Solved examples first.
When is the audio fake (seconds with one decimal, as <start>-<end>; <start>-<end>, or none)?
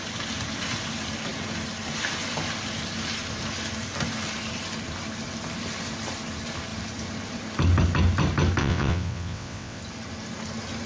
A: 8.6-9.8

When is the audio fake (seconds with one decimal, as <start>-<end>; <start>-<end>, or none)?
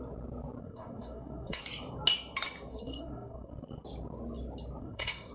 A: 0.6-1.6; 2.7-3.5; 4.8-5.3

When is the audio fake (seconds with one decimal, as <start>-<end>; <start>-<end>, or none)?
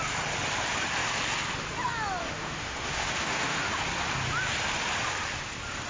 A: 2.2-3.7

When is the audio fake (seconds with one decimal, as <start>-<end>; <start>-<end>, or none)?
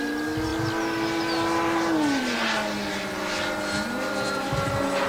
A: none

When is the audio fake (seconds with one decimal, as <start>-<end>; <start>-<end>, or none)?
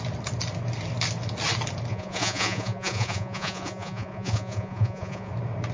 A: 1.9-5.3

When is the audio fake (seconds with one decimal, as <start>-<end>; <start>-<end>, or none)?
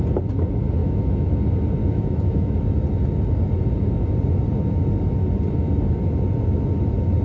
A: 0.8-1.4; 1.8-2.6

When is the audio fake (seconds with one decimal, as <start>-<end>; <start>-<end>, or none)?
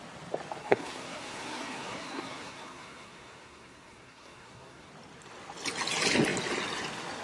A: 0.6-4.9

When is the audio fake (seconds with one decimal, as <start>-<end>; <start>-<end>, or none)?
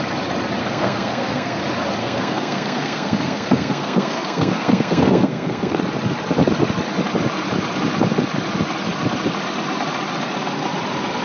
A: 0.6-1.6; 2.0-5.8